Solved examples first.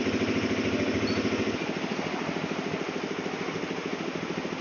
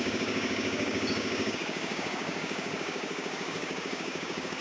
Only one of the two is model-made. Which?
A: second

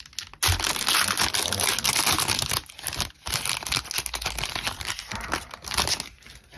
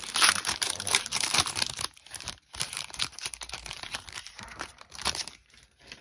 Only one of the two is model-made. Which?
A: second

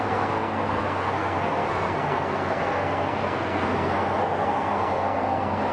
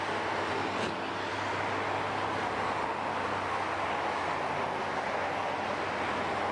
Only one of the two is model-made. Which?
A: first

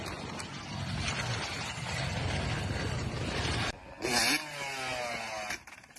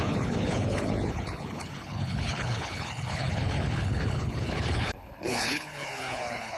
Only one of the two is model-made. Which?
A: second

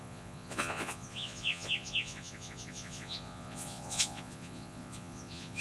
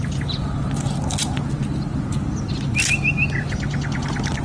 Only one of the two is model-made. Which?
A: first